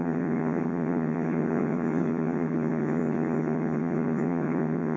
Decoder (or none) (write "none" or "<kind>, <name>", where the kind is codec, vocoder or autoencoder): vocoder, HiFi-GAN